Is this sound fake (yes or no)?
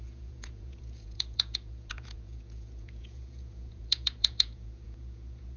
yes